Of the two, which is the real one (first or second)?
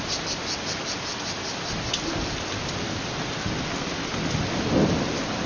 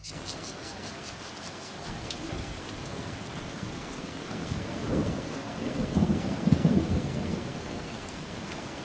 first